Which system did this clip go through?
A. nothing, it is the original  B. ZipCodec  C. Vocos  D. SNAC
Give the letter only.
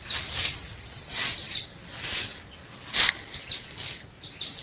A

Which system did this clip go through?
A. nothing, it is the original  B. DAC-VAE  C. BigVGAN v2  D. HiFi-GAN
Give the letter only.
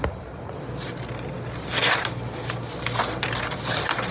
A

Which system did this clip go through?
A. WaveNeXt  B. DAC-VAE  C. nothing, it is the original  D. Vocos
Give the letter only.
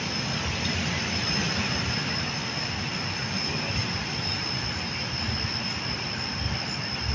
C